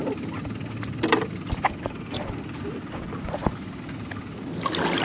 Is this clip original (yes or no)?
yes